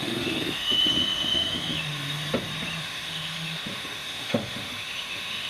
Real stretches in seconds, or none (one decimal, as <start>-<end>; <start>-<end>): 1.9-2.8

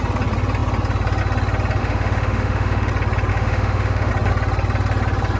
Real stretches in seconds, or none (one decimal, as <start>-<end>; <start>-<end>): 0.0-1.8; 2.9-3.3; 4.1-5.4

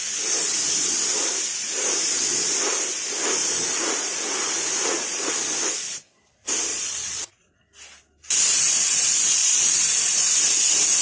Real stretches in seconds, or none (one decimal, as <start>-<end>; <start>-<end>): 0.0-3.4; 5.3-6.7; 7.6-9.4; 10.4-11.0